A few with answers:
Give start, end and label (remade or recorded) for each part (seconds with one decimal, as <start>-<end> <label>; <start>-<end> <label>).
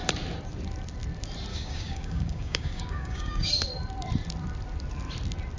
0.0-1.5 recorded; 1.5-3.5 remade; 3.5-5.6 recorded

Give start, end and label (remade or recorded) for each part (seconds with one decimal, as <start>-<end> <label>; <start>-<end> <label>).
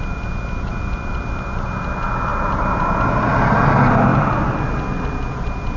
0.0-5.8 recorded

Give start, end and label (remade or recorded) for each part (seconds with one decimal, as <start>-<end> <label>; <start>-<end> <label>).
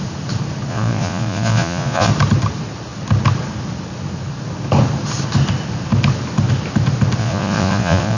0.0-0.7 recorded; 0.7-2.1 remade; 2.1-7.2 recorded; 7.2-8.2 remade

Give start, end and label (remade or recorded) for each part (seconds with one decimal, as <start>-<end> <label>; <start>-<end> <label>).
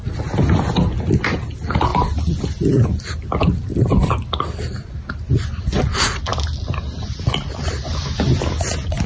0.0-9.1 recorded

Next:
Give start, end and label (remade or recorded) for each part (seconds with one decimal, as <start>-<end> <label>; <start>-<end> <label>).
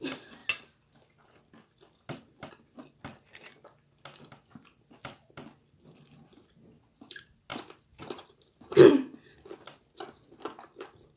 0.0-7.5 recorded; 7.5-8.9 remade; 8.9-11.2 recorded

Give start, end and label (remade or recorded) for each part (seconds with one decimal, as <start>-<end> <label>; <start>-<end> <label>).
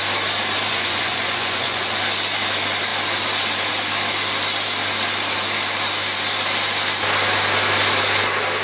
0.0-0.7 recorded; 0.7-1.9 remade; 1.9-8.6 recorded